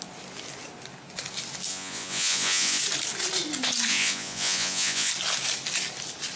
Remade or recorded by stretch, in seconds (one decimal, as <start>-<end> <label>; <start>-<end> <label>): 0.0-1.7 recorded; 1.7-2.8 remade; 2.8-3.9 recorded; 3.9-5.1 remade; 5.1-6.4 recorded